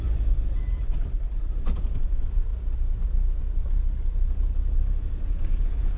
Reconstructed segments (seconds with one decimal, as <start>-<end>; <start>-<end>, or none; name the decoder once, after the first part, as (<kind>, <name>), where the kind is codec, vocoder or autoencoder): 0.0-2.5 (vocoder, BigVGAN v2); 5.6-6.0